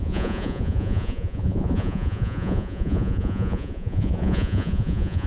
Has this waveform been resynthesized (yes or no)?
yes